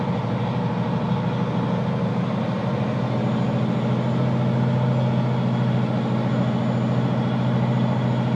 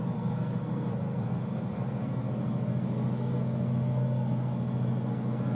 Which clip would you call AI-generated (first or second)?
second